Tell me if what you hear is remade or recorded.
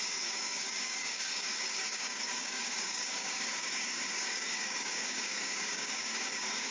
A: remade